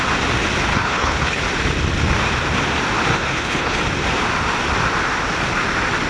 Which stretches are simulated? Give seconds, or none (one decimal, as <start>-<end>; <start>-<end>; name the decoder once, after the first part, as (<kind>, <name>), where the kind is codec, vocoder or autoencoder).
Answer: 0.7-1.4 (codec, HILCodec); 3.1-3.8